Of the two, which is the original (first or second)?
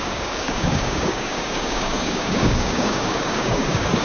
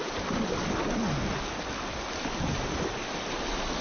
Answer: second